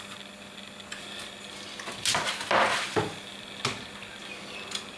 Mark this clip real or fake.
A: real